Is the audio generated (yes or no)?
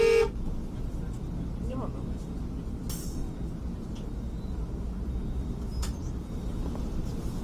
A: no